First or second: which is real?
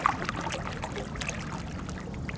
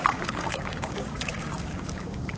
first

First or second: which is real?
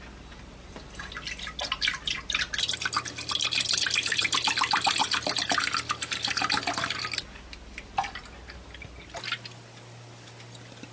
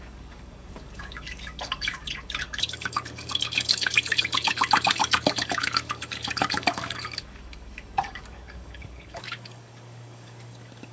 first